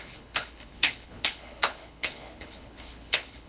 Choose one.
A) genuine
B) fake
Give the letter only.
B